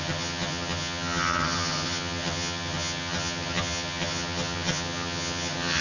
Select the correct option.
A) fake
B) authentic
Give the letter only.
A